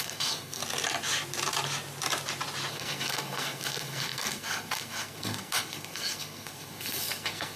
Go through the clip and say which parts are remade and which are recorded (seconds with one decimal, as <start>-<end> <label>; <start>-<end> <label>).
0.0-0.6 remade; 0.6-2.7 recorded; 2.7-7.6 remade